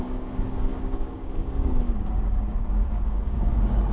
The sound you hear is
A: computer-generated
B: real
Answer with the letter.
A